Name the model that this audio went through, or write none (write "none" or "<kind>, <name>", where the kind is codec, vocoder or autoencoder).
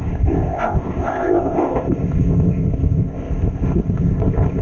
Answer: codec, ZipCodec